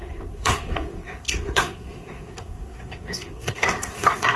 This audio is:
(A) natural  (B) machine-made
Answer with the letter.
B